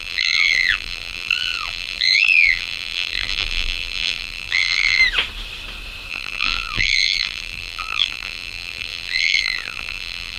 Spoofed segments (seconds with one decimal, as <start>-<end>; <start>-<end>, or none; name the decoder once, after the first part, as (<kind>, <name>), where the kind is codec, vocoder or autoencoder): 0.0-5.0 (vocoder, BigVGAN v2); 6.1-10.4